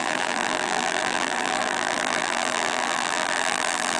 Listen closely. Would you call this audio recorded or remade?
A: remade